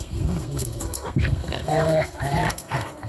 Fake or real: fake